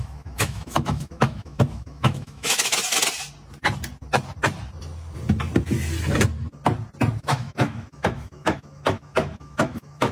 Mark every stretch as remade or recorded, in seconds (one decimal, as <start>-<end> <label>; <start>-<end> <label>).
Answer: 0.0-2.7 remade; 2.7-7.2 recorded; 7.2-10.1 remade